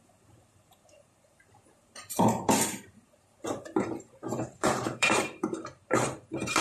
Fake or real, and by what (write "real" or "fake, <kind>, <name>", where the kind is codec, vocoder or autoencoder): fake, vocoder, BigVGAN v2